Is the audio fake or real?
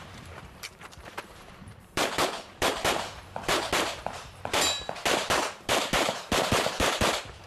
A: fake